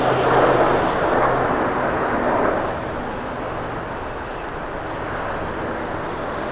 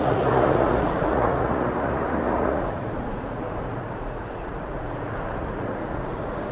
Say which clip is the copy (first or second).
second